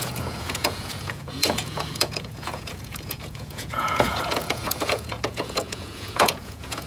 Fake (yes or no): yes